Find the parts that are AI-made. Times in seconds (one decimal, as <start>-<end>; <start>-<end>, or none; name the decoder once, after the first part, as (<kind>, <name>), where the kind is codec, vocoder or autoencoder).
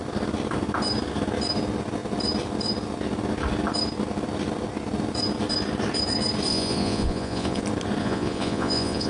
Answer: 6.5-7.6 (vocoder, Vocos); 8.0-9.1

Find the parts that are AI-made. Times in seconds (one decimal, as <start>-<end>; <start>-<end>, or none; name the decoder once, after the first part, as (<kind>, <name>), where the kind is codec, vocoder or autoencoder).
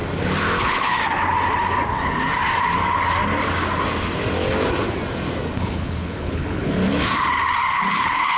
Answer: 0.6-1.0 (codec, HILCodec); 5.6-6.8; 7.7-8.4